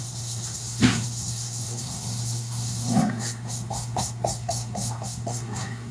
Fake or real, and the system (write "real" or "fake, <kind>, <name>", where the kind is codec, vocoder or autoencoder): fake, codec, SNAC